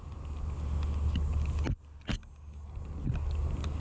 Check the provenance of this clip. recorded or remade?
recorded